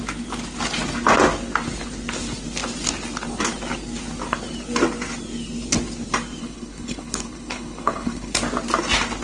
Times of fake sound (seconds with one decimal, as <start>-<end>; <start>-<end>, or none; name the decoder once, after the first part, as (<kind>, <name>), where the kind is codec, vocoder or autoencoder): 6.4-8.3 (codec, HILCodec)